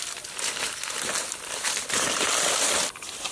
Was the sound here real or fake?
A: real